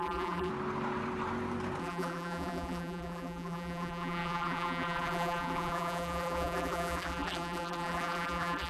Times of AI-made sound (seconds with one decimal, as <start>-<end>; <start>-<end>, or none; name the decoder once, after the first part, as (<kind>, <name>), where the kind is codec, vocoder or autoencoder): 0.0-0.5 (vocoder, BigVGAN v2); 1.8-8.7